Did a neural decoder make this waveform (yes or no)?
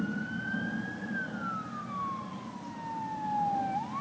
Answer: no